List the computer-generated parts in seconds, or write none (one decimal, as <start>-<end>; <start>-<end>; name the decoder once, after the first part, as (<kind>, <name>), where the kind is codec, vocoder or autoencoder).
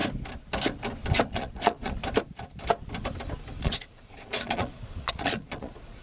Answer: 1.3-2.0 (vocoder, Vocos); 3.6-6.0